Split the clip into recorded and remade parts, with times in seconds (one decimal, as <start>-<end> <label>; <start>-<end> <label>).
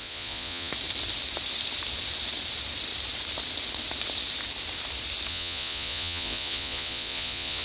0.0-0.7 remade; 0.7-5.3 recorded; 5.3-7.6 remade